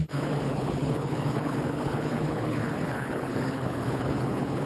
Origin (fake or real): fake